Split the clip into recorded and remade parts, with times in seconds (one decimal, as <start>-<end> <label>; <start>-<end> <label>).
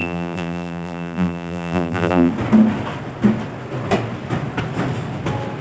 0.0-2.3 remade; 2.3-5.6 recorded